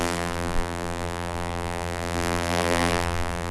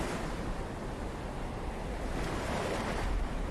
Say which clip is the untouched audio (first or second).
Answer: second